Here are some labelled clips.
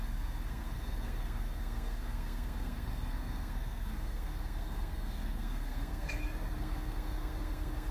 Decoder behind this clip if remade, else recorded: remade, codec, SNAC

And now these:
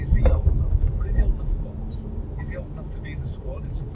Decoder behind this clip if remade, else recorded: recorded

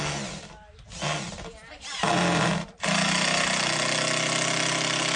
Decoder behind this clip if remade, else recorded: recorded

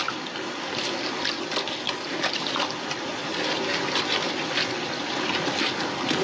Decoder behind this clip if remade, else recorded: recorded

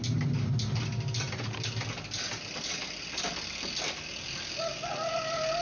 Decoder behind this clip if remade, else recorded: recorded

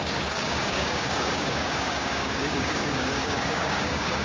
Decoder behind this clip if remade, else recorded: remade, codec, DAC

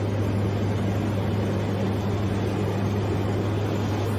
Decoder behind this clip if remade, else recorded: recorded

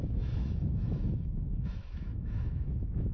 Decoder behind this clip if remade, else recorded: remade, autoencoder, DAC-VAE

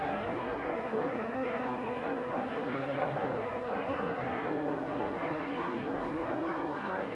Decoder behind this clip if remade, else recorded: remade, codec, SNAC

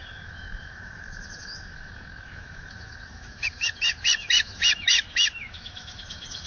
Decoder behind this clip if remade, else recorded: remade, autoencoder, DAC-VAE